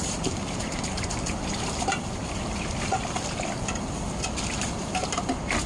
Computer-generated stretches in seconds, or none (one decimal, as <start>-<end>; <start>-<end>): 0.0-2.2; 4.5-5.7